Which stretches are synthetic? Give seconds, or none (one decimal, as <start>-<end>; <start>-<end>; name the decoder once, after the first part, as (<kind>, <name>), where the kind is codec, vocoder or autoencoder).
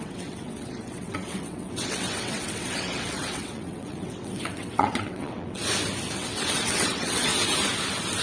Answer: 0.0-5.6 (vocoder, WaveNeXt); 6.2-7.3